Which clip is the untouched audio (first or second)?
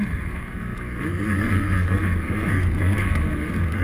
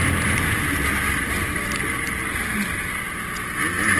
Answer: second